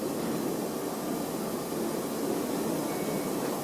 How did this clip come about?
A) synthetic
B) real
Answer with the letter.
B